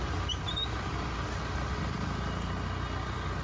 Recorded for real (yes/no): yes